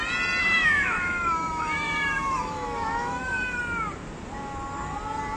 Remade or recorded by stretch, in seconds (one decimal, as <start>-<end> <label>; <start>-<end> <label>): 0.0-0.4 recorded; 0.4-3.6 remade; 3.6-5.4 recorded